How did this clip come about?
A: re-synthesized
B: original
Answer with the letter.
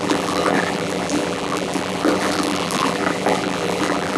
A